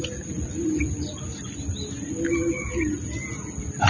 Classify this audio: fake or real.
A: real